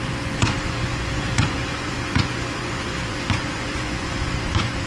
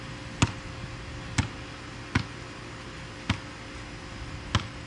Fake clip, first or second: first